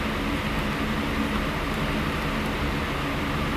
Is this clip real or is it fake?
real